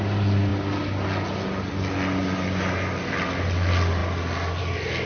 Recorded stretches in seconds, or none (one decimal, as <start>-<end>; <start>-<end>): 0.0-5.1